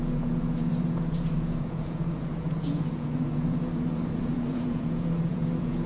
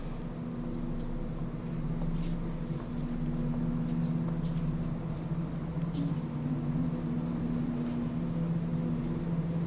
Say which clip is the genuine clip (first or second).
second